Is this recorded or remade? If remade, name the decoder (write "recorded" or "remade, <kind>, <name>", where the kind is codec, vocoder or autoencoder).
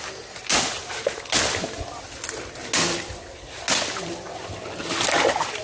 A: recorded